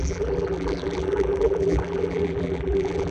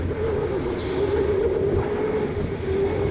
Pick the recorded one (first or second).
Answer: second